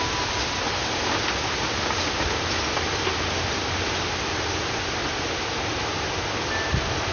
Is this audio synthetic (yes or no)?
no